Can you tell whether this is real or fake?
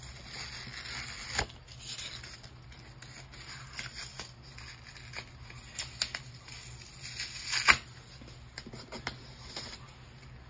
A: real